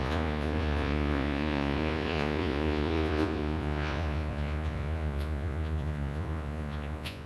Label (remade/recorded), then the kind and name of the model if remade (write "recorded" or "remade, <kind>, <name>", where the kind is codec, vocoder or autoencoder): remade, vocoder, Vocos